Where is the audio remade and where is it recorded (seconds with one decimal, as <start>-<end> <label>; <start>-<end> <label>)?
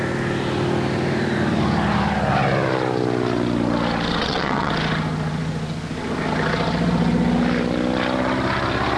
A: 0.0-4.2 recorded; 4.2-4.7 remade; 4.7-9.0 recorded